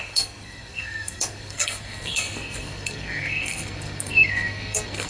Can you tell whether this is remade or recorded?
remade